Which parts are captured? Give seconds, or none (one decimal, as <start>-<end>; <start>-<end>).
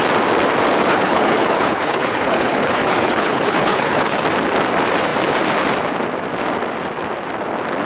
0.0-0.9; 4.2-7.9